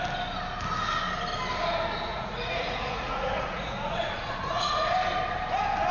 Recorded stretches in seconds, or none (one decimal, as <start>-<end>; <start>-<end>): 0.0-2.1; 4.9-5.9